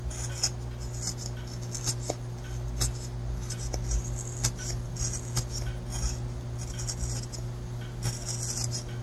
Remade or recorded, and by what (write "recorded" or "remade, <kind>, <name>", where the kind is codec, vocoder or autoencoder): recorded